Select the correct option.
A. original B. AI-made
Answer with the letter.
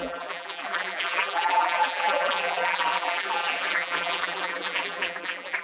B